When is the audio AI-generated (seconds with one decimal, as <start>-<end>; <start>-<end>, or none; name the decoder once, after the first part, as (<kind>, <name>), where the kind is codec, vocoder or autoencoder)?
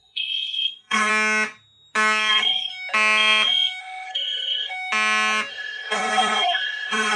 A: 0.0-1.1 (codec, SNAC); 2.3-2.7; 3.8-4.7; 5.5-7.2